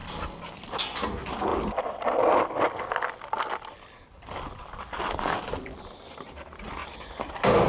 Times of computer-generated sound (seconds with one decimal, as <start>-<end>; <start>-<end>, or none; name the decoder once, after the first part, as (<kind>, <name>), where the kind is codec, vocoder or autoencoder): none